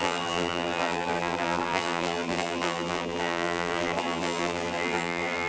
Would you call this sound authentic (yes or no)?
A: no